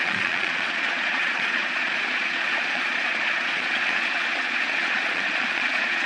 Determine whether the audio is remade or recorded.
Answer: remade